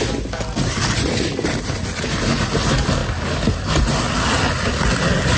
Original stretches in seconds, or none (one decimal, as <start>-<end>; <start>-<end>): 0.0-5.4

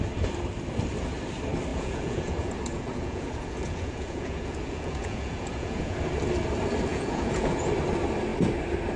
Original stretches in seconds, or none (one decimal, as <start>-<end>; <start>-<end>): 0.0-1.7; 6.0-6.9; 7.7-9.0

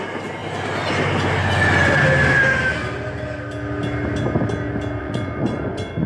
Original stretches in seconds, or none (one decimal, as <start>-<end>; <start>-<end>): 0.0-5.0

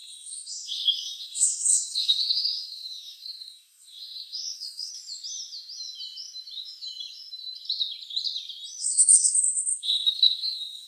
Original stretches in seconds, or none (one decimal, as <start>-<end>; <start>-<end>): 4.9-8.8